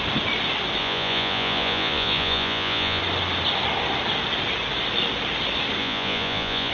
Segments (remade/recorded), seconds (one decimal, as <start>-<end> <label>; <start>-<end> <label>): 0.0-0.8 recorded; 0.8-3.0 remade; 3.0-5.8 recorded; 5.8-6.7 remade